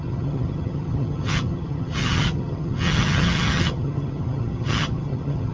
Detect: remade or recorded remade